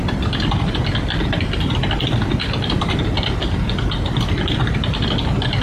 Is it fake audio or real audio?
real